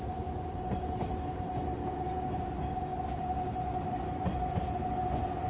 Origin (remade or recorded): recorded